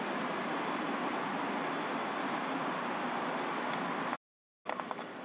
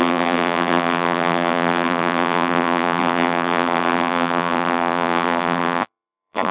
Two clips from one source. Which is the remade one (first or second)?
second